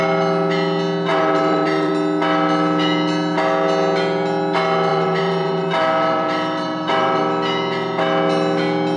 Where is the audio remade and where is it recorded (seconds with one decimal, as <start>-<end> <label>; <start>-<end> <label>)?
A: 0.0-1.1 recorded; 1.1-1.9 remade; 1.9-4.9 recorded; 4.9-7.2 remade; 7.2-9.0 recorded